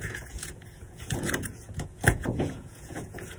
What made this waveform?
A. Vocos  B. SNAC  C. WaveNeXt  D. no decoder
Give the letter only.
A